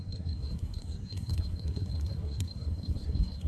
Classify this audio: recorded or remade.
remade